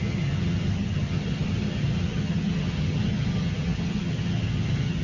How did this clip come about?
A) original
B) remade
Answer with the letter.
B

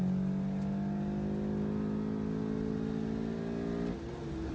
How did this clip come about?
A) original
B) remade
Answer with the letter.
A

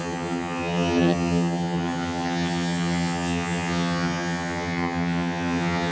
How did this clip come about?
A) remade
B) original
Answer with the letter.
A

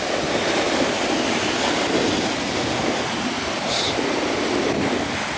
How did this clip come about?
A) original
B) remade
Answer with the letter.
A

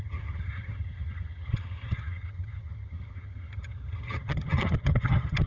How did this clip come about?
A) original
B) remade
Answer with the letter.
B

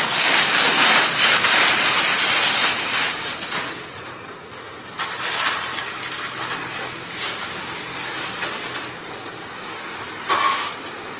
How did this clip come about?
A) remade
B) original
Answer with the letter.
B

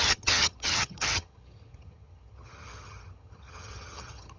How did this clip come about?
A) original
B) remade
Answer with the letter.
B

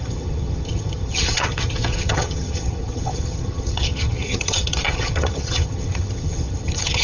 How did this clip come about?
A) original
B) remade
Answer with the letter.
B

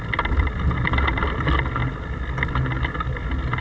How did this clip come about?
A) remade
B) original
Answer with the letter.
B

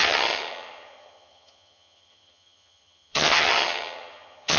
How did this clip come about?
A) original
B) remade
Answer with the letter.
B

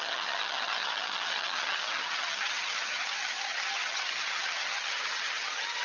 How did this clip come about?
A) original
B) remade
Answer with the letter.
B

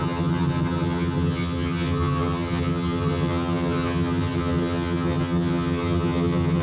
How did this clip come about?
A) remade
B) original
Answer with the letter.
A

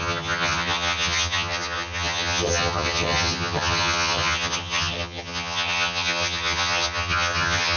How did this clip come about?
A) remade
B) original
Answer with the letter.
A